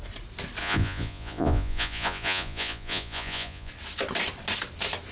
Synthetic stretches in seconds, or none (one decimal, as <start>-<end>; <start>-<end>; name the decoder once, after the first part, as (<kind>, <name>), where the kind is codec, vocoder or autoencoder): 0.6-3.7 (vocoder, Vocos)